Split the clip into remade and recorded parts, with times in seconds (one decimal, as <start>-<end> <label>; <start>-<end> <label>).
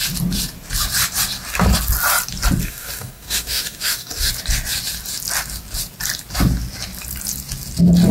0.0-2.6 recorded; 2.6-4.3 remade; 4.3-8.1 recorded